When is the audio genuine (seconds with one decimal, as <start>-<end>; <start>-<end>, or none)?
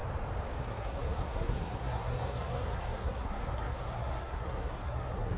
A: 0.0-0.6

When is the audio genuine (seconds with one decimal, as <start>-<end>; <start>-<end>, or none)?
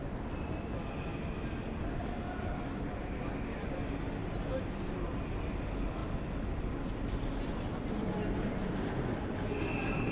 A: 0.0-10.1